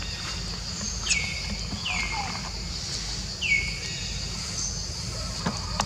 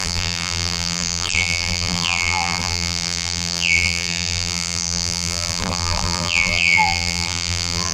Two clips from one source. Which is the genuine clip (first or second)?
first